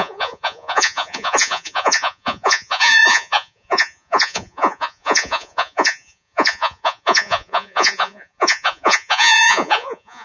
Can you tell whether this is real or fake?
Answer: fake